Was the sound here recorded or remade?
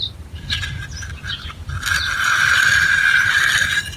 recorded